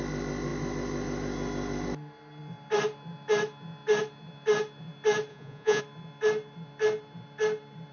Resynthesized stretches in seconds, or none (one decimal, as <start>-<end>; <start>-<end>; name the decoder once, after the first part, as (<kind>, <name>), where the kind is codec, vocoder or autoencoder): 5.3-5.8 (vocoder, Vocos)